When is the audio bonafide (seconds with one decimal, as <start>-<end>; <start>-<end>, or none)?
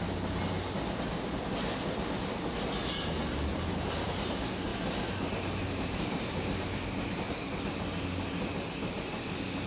0.0-3.5; 4.1-4.7; 7.3-9.7